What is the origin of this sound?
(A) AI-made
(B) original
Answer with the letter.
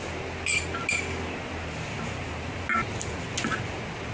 B